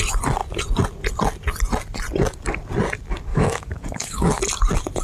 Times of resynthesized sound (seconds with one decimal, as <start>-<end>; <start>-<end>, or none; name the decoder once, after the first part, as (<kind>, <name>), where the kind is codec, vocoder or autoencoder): 3.3-4.4 (codec, DAC)